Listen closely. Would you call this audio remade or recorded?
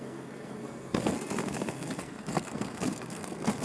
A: remade